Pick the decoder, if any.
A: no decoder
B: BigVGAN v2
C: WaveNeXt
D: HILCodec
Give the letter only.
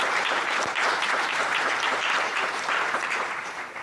B